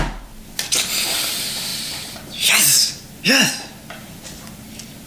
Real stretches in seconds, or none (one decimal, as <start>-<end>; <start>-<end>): 0.0-5.1